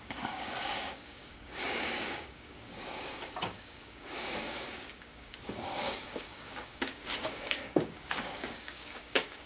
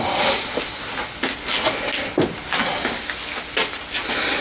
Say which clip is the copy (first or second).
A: first